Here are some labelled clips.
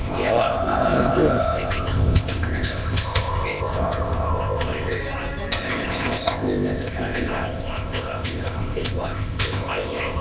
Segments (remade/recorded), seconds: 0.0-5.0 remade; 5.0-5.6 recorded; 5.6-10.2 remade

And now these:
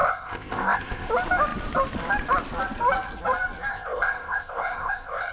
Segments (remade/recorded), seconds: 0.0-1.1 remade; 1.1-3.7 recorded; 3.7-5.3 remade